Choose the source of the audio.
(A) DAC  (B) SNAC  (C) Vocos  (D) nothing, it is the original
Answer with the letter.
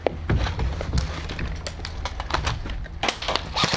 D